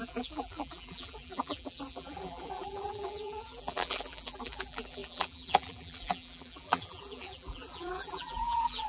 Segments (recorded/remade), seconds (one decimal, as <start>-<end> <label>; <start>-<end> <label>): 0.0-8.9 remade